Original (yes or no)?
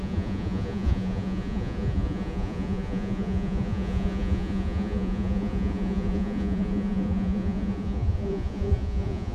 no